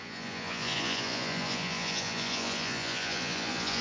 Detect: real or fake fake